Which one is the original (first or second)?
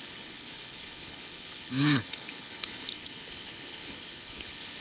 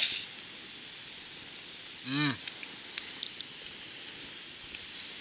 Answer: second